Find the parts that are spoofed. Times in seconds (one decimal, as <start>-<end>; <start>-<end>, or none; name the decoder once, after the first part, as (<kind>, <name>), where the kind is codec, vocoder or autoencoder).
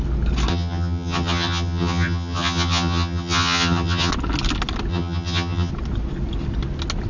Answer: 0.5-4.1 (vocoder, HiFi-GAN); 4.9-5.7